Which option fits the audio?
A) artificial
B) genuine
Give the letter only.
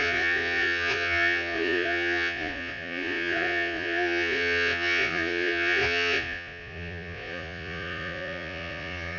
A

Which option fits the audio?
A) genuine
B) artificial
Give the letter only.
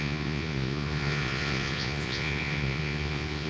B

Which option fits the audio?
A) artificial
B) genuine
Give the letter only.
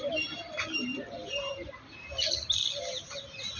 B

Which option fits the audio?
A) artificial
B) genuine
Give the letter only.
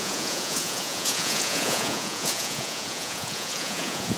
A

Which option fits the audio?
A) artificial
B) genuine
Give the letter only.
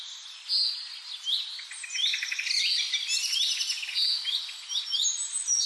B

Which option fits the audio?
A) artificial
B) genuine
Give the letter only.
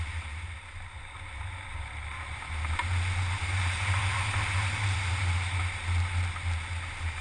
B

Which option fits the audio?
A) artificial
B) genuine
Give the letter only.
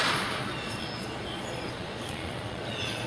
A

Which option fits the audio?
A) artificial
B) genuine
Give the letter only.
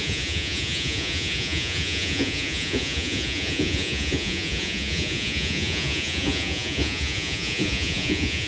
A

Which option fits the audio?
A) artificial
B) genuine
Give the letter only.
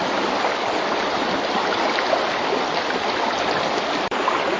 B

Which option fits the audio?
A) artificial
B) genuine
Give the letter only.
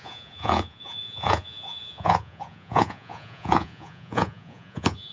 A